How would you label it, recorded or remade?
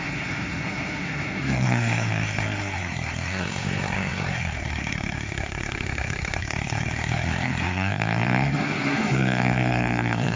remade